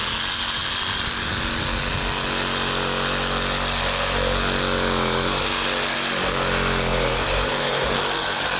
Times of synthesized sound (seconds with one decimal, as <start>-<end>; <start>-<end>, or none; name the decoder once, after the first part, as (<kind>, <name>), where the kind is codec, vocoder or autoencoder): 6.9-7.9 (vocoder, BigVGAN v2)